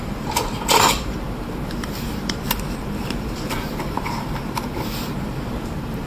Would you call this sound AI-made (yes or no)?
yes